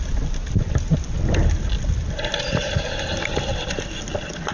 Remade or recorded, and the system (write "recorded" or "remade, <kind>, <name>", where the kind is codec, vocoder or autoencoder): recorded